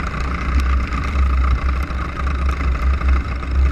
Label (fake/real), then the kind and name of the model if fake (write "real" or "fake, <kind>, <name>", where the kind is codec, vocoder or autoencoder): real